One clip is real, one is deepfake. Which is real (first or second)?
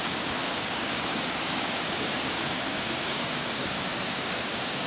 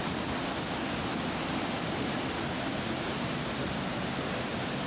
second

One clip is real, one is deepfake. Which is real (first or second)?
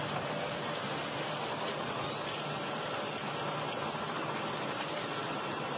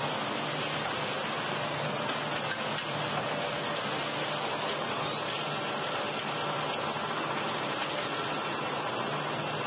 second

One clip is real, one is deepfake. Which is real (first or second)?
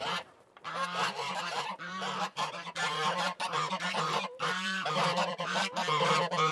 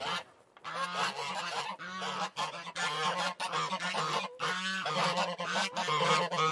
second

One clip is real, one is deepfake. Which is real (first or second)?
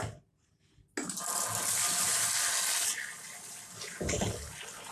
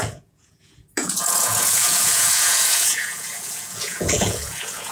first